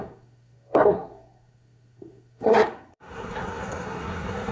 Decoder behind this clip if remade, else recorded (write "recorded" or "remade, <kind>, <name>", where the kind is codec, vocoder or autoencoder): remade, codec, SNAC